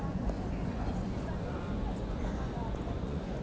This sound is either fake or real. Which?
fake